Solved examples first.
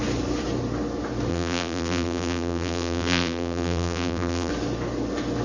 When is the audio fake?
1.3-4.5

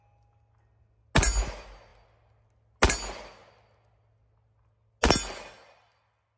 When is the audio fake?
none

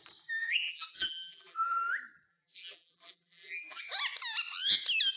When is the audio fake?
0.4-1.8; 2.3-3.8

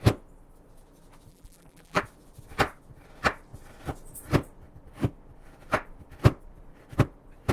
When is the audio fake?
1.3-2.0

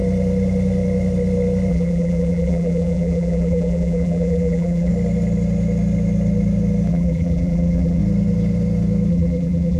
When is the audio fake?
1.7-4.9; 6.9-8.0; 9.1-9.8

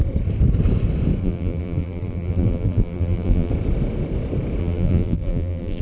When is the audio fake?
1.2-3.5; 4.6-5.8

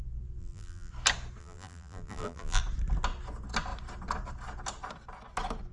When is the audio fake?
0.4-0.9; 1.4-2.6

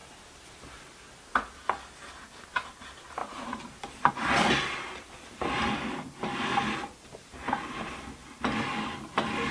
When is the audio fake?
3.2-4.1